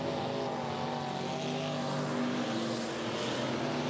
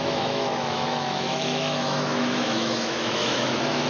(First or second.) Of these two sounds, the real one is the first